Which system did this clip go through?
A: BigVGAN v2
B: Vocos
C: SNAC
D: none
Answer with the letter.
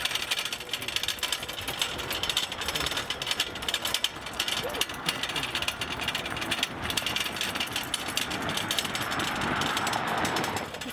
D